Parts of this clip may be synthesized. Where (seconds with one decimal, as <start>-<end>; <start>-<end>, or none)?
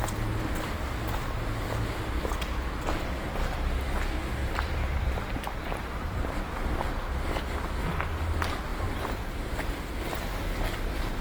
4.4-6.4